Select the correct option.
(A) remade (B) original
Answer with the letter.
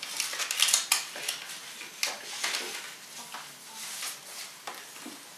B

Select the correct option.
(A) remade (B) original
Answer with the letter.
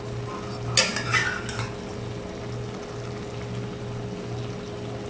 B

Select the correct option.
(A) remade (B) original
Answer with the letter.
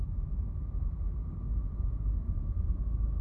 A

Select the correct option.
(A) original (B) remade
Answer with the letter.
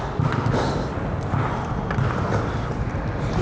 A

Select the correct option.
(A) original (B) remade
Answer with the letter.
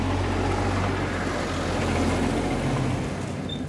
A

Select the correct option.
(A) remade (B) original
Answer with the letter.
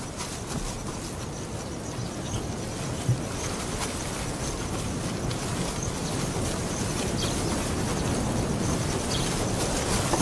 B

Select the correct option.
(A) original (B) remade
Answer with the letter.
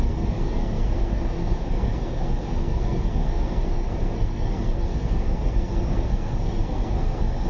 B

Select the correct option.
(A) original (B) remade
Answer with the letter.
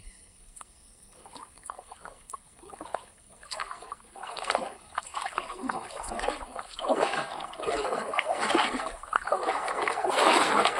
B